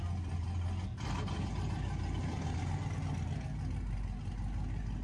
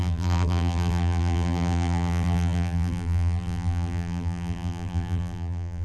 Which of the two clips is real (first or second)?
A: first